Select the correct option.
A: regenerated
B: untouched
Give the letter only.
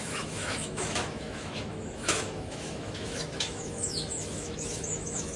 A